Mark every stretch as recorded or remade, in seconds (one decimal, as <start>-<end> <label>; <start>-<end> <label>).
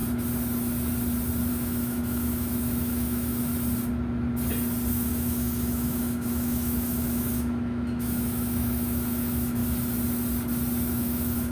0.0-1.5 recorded; 1.5-3.5 remade; 3.5-4.9 recorded; 4.9-9.6 remade; 9.6-10.9 recorded; 10.9-11.5 remade